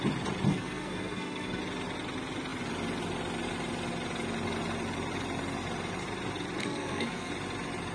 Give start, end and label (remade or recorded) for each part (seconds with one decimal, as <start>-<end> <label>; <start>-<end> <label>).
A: 0.0-0.5 recorded; 0.5-1.6 remade; 1.6-6.6 recorded; 6.6-7.3 remade; 7.3-7.9 recorded